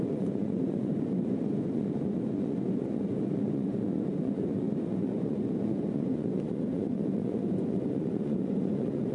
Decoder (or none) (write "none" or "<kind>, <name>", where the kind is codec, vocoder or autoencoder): vocoder, Vocos